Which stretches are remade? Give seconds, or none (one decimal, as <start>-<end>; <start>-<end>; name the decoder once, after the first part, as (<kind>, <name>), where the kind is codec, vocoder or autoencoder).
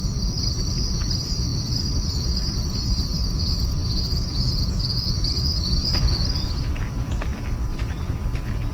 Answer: 3.8-5.1 (vocoder, Vocos)